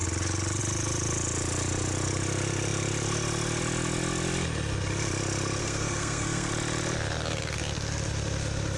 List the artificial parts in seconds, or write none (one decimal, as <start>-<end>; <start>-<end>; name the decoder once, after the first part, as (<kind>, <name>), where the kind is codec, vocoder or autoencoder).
5.6-6.5 (codec, SNAC)